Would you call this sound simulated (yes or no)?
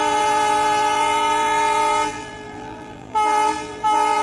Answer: yes